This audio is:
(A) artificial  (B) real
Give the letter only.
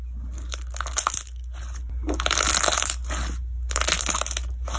B